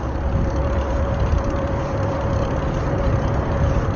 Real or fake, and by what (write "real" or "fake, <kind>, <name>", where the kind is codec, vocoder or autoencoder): real